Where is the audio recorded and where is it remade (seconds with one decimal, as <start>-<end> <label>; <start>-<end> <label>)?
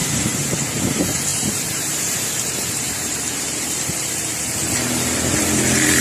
0.0-0.5 remade; 0.5-1.3 recorded; 1.3-4.4 remade; 4.4-6.0 recorded